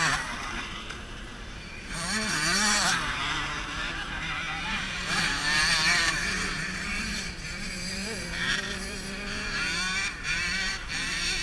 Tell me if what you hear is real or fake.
fake